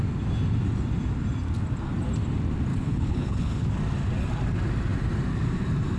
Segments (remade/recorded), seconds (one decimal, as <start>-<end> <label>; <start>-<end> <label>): 0.0-2.7 recorded; 2.7-3.8 remade; 3.8-6.0 recorded